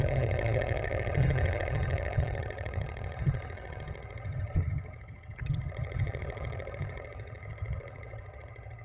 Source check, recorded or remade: remade